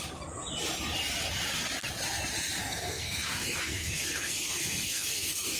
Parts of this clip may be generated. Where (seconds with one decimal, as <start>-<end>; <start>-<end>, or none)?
2.6-5.6